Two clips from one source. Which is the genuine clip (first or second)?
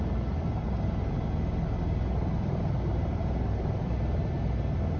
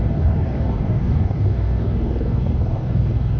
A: first